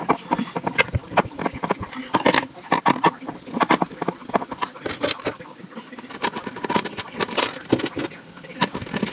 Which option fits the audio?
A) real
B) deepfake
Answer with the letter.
A